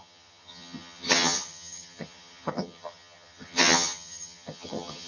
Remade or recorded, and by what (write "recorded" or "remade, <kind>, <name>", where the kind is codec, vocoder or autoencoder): remade, vocoder, HiFi-GAN